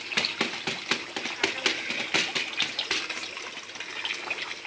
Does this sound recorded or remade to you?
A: recorded